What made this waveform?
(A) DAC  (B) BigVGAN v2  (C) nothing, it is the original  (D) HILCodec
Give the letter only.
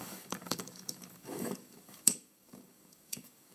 A